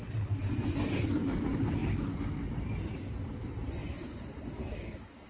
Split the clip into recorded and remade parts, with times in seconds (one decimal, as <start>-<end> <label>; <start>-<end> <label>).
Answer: 0.0-3.8 recorded; 3.8-5.3 remade